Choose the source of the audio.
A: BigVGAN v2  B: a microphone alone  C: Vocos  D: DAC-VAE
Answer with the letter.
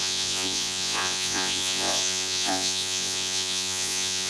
C